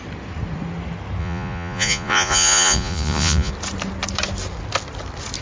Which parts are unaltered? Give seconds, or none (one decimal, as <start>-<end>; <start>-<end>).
0.0-1.2; 3.5-5.4